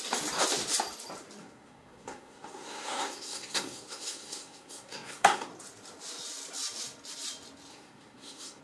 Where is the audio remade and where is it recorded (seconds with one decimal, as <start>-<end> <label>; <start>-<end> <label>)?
0.0-1.4 recorded; 1.4-5.5 remade; 5.5-7.7 recorded; 7.7-8.6 remade